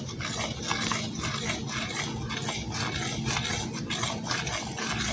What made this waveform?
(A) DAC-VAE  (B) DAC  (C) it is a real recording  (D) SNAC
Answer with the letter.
C